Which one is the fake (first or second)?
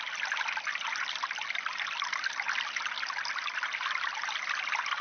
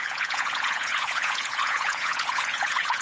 second